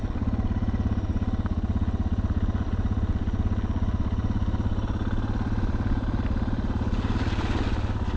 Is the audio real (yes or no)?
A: yes